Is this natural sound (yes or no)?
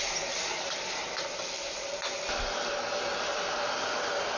yes